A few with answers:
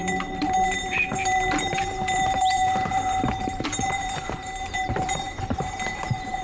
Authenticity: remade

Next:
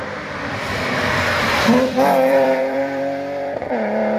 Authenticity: remade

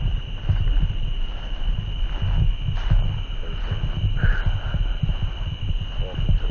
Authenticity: recorded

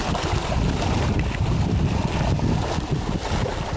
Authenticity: remade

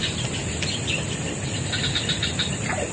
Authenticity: recorded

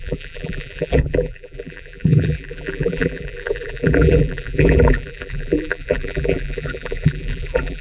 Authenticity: remade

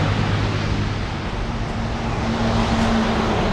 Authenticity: recorded